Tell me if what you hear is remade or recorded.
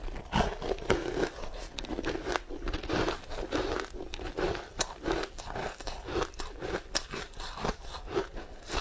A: recorded